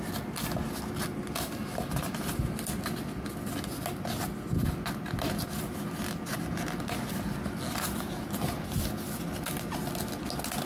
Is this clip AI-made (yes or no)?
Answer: no